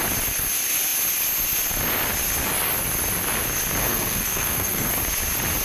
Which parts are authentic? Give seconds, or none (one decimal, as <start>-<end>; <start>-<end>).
0.0-3.8; 4.9-5.6